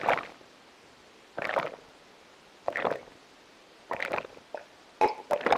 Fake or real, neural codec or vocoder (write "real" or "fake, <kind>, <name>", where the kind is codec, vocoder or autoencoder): real